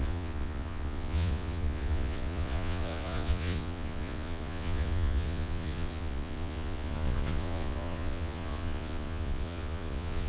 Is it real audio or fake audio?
fake